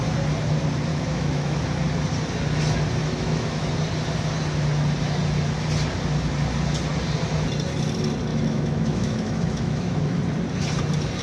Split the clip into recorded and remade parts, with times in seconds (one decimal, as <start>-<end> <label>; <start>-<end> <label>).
0.0-0.9 recorded; 0.9-1.6 remade; 1.6-3.0 recorded; 3.0-3.7 remade; 3.7-8.3 recorded; 8.3-10.2 remade; 10.2-11.2 recorded